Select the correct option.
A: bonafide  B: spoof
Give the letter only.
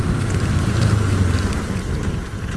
A